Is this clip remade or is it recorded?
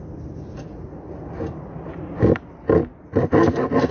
recorded